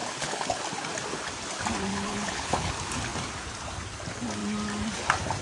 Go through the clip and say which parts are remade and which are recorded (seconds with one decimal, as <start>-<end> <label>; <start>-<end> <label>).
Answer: 0.0-0.6 remade; 0.6-1.9 recorded; 1.9-2.7 remade; 2.7-5.4 recorded